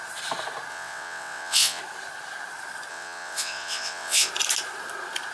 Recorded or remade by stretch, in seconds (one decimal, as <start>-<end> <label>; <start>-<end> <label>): 0.0-0.7 recorded; 0.7-1.8 remade; 1.8-2.9 recorded; 2.9-4.3 remade; 4.3-5.3 recorded